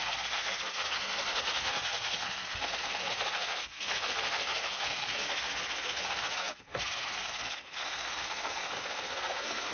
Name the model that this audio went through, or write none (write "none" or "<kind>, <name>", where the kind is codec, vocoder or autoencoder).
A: codec, SNAC